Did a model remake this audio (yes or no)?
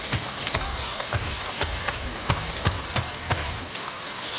yes